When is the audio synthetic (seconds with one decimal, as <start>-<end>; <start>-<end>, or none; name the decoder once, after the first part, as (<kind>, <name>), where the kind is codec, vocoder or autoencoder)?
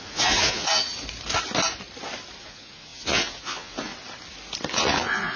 0.0-0.9 (vocoder, Vocos); 2.4-3.9; 4.7-5.4